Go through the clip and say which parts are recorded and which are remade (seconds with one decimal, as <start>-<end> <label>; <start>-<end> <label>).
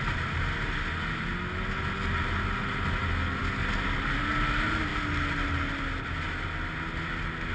0.0-7.5 recorded